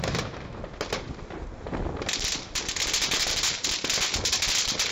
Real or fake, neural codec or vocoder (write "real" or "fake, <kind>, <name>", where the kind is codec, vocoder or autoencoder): real